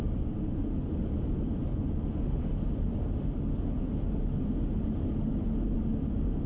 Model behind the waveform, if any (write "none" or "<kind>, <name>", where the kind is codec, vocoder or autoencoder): none